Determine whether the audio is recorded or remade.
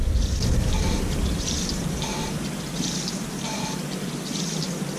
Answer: recorded